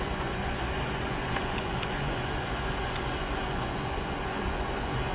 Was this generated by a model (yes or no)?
yes